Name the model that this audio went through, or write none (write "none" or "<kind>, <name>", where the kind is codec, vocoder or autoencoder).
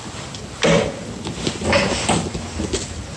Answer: none